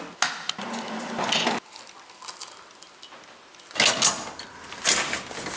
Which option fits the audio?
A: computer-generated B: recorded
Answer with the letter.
B